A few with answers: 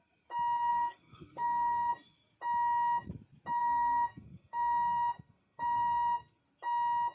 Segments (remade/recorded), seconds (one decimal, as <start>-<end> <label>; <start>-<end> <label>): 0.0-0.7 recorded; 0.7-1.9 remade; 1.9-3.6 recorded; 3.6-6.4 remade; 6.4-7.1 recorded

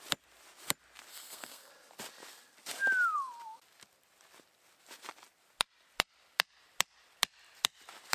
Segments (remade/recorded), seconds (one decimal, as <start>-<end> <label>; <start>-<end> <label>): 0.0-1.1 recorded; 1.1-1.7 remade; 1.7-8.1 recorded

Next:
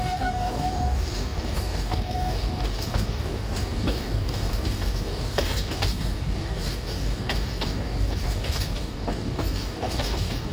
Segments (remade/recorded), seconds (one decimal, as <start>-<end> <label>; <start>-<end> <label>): 0.0-10.5 remade

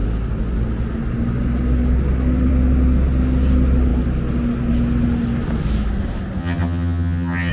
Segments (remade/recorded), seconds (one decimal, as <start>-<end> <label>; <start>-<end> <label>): 0.0-6.4 recorded; 6.4-7.5 remade